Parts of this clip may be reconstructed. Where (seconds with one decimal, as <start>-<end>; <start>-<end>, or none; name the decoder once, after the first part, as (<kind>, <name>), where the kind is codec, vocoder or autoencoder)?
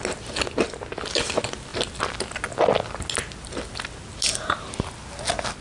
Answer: none